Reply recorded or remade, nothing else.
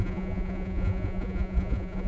remade